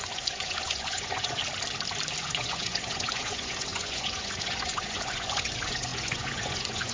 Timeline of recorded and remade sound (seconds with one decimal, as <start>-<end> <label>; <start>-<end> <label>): 0.0-1.4 remade; 1.4-2.2 recorded; 2.2-6.9 remade